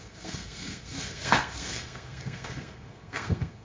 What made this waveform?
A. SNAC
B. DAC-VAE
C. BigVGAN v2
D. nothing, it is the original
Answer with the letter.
A